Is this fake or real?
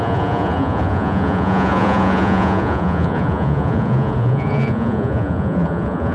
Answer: fake